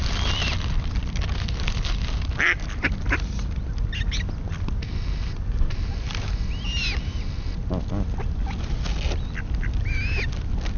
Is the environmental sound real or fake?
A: real